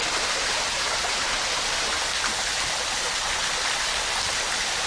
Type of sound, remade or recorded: recorded